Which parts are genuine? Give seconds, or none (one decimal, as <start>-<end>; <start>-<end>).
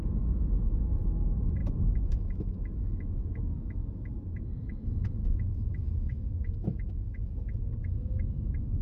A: 0.0-1.6; 4.1-4.6; 7.3-7.8